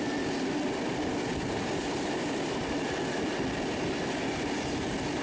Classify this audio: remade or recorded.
remade